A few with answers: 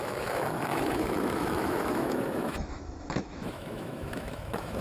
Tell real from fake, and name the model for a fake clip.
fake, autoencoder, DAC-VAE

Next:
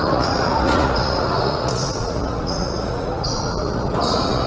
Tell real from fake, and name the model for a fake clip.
fake, vocoder, Vocos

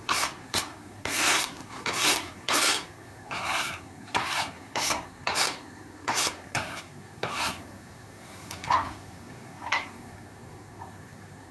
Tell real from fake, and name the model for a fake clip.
fake, codec, SNAC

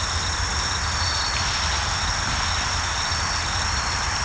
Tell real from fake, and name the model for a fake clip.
real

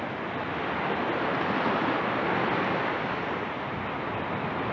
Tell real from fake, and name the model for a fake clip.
real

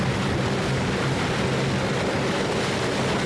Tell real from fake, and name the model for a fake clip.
real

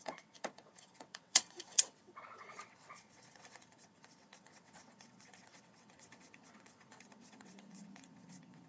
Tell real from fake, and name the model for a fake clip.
fake, vocoder, WaveNeXt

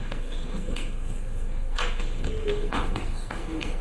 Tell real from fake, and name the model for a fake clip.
fake, codec, SNAC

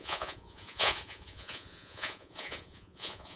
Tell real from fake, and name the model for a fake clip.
fake, vocoder, Vocos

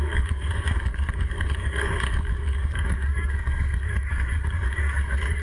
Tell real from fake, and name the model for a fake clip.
fake, codec, DAC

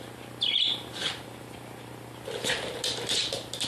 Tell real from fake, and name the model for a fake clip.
real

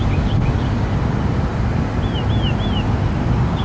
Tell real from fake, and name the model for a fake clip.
real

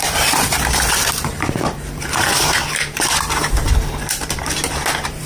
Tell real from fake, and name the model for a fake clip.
fake, vocoder, BigVGAN v2